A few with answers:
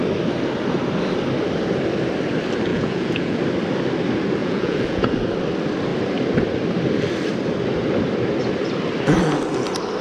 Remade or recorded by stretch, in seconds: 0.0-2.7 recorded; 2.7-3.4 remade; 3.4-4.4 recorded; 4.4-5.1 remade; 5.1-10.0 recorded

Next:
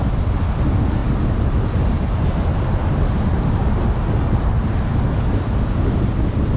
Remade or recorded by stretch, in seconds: 0.0-1.0 recorded; 1.0-1.9 remade; 1.9-2.5 recorded; 2.5-5.0 remade; 5.0-6.6 recorded

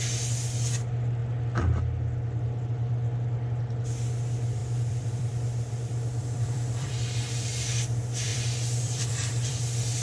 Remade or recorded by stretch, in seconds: 0.0-4.6 recorded; 4.6-6.9 remade; 6.9-8.3 recorded; 8.3-9.6 remade; 9.6-10.0 recorded

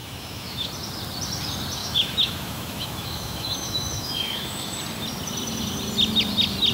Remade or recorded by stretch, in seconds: 0.0-0.7 remade; 0.7-1.8 recorded; 1.8-4.8 remade; 4.8-6.7 recorded

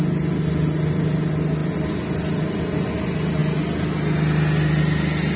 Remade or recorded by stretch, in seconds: 0.0-5.4 recorded

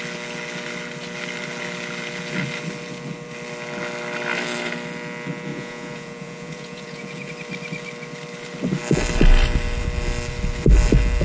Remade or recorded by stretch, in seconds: 0.0-5.5 recorded; 5.5-7.3 remade; 7.3-11.2 recorded